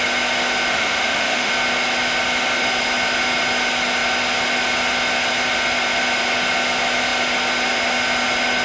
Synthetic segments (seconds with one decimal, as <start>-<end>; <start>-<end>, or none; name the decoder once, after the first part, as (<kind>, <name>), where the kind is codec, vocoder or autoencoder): 0.7-1.5 (autoencoder, DAC-VAE)